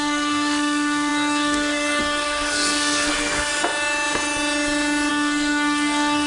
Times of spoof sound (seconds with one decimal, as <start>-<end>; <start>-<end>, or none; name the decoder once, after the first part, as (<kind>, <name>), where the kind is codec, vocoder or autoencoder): 0.0-3.5 (codec, SNAC); 5.1-6.3